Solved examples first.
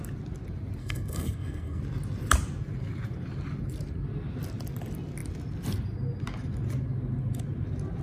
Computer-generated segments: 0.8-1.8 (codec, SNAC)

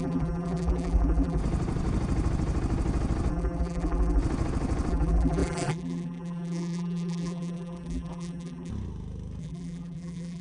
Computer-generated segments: 0.0-1.4 (vocoder, BigVGAN v2); 3.3-4.2; 4.9-8.7; 9.4-10.4

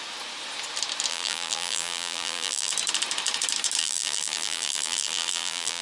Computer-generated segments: 1.1-2.7 (vocoder, BigVGAN v2); 3.8-5.8

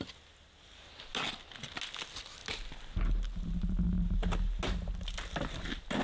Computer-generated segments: none

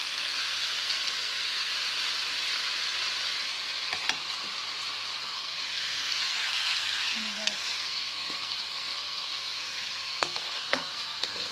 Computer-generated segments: 0.0-1.7 (codec, SNAC); 5.2-11.5